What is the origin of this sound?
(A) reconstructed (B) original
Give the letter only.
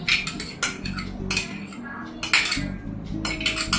B